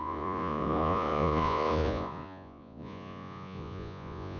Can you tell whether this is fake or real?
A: fake